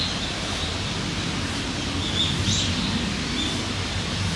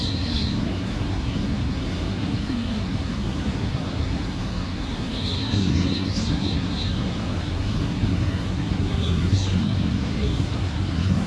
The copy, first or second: second